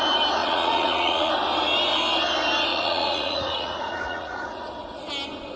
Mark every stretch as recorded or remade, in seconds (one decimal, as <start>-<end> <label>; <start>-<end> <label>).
0.0-0.4 recorded; 0.4-1.3 remade; 1.3-2.7 recorded; 2.7-5.1 remade; 5.1-5.6 recorded